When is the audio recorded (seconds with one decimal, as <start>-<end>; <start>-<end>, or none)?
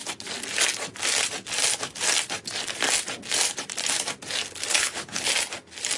0.0-4.7; 5.3-6.0